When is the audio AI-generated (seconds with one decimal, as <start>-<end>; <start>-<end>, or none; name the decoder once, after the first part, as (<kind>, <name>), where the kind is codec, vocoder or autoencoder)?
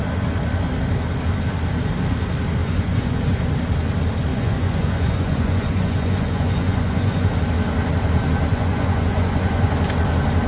2.6-3.2 (vocoder, Vocos); 4.3-7.3; 8.5-9.7